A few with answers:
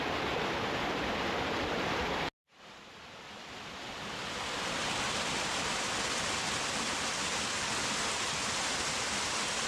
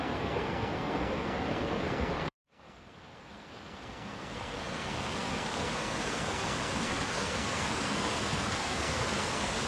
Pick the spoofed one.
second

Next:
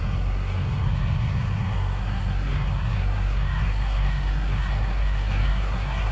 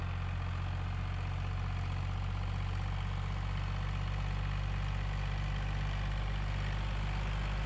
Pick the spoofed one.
first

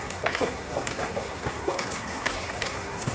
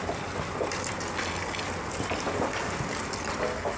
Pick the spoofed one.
first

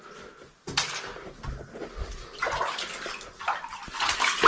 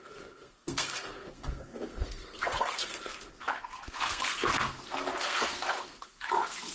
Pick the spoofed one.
second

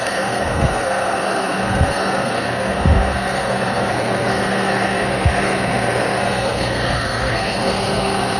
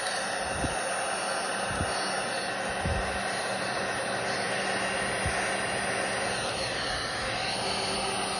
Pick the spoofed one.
first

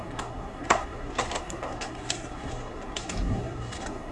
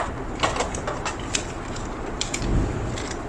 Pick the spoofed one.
first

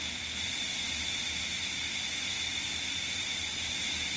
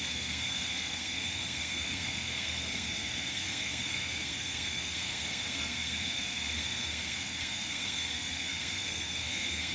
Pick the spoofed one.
second